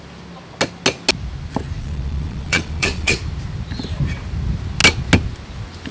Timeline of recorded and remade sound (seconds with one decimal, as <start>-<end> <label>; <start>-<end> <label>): 0.0-1.8 recorded; 1.8-3.2 remade; 3.2-5.9 recorded